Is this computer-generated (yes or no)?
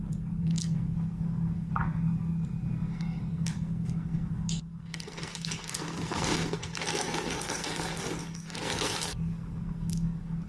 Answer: yes